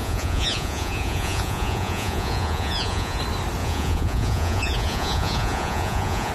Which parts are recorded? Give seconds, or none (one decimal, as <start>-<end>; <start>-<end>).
3.2-3.6